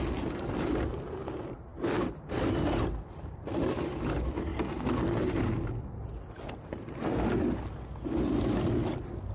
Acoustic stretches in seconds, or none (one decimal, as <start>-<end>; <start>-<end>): 0.0-9.3